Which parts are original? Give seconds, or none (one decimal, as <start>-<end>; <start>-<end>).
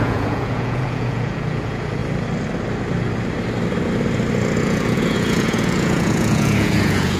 2.0-4.6